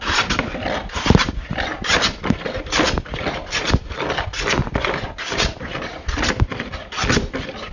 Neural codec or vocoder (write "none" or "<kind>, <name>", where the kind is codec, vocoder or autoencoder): none